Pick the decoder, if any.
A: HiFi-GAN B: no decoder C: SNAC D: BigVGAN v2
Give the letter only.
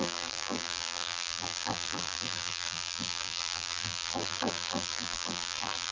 D